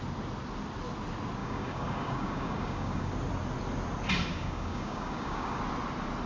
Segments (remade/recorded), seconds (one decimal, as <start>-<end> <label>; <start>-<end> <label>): 0.0-1.4 recorded; 1.4-3.1 remade; 3.1-4.3 recorded; 4.3-5.6 remade; 5.6-6.3 recorded